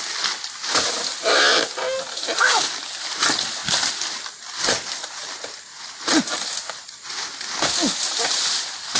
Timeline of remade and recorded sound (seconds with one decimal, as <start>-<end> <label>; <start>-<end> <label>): 0.0-9.0 recorded